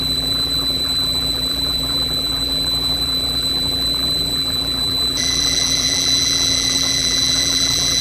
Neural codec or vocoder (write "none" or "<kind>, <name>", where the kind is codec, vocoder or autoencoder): vocoder, BigVGAN v2